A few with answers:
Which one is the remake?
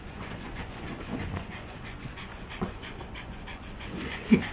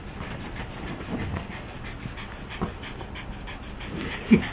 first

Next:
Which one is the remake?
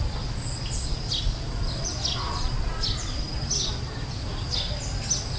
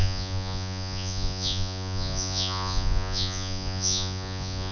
second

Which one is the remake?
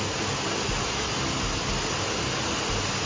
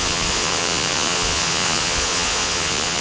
second